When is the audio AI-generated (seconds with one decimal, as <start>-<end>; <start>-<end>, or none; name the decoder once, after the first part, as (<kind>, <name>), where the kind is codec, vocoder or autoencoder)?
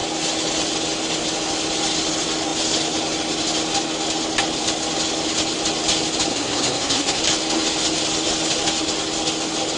6.3-7.2 (codec, SNAC)